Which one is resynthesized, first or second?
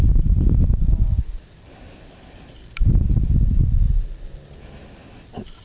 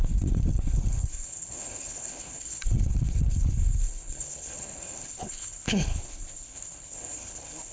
second